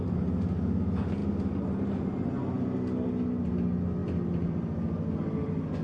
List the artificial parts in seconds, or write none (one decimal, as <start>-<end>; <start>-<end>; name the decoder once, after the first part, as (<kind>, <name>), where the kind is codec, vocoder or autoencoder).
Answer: none